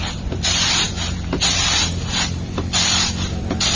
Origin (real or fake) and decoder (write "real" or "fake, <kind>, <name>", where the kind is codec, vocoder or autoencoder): real